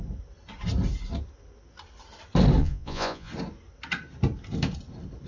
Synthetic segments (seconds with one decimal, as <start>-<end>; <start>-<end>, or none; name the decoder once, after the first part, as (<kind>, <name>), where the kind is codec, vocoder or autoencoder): 2.6-3.3 (vocoder, Vocos)